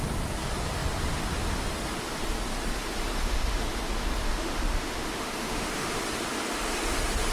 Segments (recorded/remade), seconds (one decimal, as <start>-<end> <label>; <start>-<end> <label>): 0.0-3.2 recorded; 3.2-3.8 remade; 3.8-4.2 recorded; 4.2-6.0 remade; 6.0-7.3 recorded